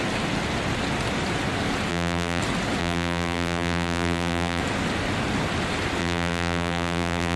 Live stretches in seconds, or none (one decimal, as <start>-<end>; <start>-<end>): 0.0-1.9; 2.4-2.8; 4.6-6.0